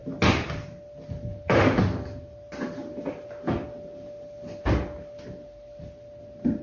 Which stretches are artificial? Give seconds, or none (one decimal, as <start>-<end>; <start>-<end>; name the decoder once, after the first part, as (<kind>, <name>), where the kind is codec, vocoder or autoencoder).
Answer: none